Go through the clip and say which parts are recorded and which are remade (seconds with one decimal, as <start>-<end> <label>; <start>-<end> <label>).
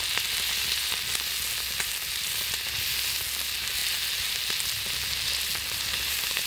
0.0-6.5 recorded